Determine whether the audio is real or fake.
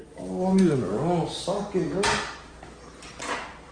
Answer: real